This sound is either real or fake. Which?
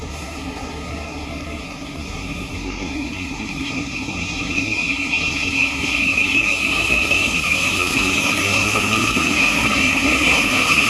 fake